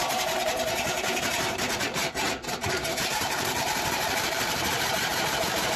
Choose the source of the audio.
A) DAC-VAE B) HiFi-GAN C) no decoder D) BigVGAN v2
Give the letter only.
D